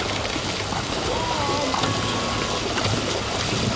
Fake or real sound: real